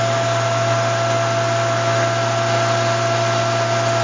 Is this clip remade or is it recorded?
recorded